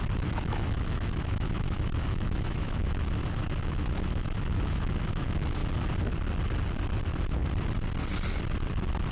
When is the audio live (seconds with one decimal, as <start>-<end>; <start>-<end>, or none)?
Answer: 5.6-9.1